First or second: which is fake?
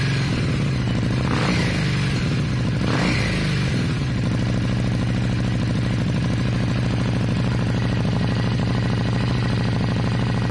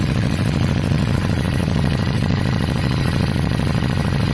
second